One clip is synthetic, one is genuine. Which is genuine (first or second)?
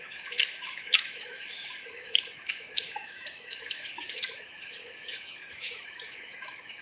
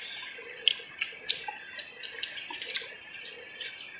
second